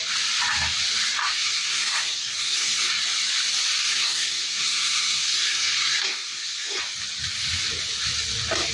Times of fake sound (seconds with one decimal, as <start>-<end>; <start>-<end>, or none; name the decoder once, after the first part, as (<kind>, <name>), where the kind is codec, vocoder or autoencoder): 1.2-2.8 (codec, SNAC); 3.8-6.8